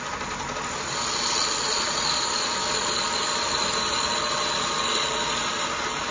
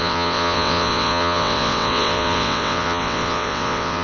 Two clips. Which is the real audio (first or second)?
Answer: first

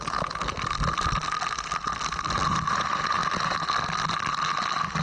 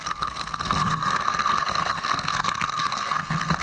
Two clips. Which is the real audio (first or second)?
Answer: first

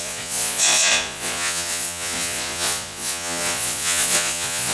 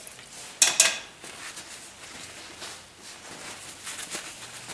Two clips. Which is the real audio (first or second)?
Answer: second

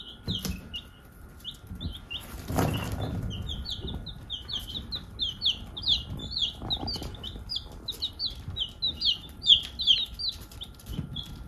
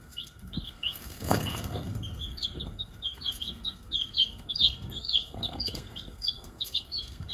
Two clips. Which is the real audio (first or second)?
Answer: first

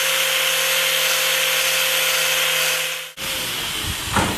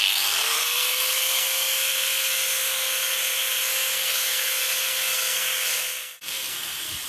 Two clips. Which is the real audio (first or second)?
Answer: first